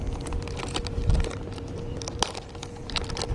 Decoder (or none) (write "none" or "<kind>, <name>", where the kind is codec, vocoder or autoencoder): vocoder, BigVGAN v2